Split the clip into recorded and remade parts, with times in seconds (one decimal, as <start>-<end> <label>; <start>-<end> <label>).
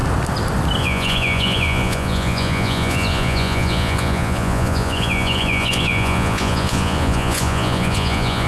0.0-0.8 recorded; 0.8-8.5 remade